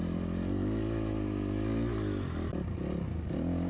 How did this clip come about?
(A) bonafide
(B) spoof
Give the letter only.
A